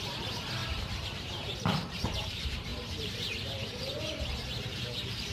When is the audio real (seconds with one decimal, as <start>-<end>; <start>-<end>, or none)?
none